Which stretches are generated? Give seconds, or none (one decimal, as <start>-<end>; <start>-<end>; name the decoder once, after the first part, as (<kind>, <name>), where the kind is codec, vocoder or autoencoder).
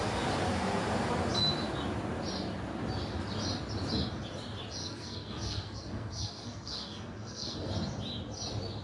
4.8-7.7 (codec, SNAC)